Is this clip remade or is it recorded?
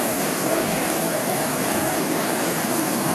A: remade